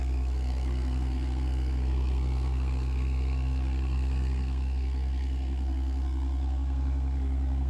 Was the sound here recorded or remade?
remade